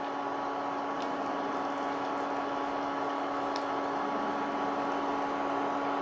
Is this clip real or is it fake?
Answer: real